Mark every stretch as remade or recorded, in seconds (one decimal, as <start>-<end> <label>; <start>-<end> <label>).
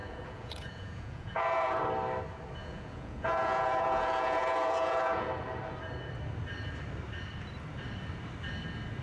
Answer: 0.0-1.7 remade; 1.7-2.6 recorded; 2.6-5.3 remade; 5.3-9.0 recorded